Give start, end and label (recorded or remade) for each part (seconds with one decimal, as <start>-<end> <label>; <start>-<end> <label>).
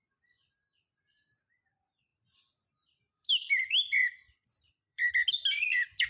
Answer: 0.0-2.1 recorded; 2.1-3.3 remade; 3.3-4.0 recorded; 4.0-5.1 remade; 5.1-6.1 recorded